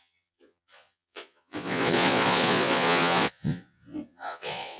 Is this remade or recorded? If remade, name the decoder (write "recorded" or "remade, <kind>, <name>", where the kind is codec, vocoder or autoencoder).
remade, vocoder, Vocos